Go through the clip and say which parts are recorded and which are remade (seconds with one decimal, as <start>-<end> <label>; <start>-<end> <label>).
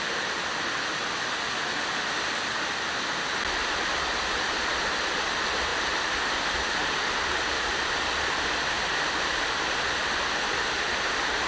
0.0-11.5 recorded